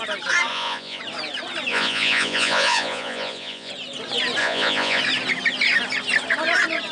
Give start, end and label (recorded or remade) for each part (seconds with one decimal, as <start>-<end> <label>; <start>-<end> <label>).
0.0-0.5 recorded; 0.5-1.0 remade; 1.0-1.7 recorded; 1.7-3.7 remade; 3.7-4.4 recorded; 4.4-5.0 remade; 5.0-6.9 recorded